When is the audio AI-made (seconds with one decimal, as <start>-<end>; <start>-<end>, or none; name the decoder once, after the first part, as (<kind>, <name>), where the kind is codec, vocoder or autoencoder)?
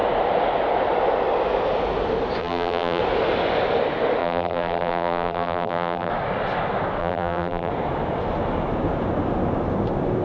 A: 2.4-3.0 (vocoder, BigVGAN v2); 4.2-6.1; 7.0-7.7